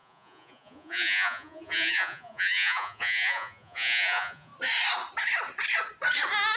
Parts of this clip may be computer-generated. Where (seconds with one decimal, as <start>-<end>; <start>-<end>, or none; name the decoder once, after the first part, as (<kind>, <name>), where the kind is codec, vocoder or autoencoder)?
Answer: 0.0-4.5 (vocoder, Vocos)